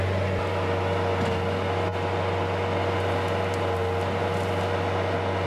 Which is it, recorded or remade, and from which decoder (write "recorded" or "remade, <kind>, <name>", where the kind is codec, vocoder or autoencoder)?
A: recorded